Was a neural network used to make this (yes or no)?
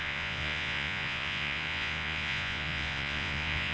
yes